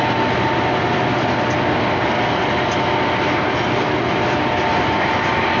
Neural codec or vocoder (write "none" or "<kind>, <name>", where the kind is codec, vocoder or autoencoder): none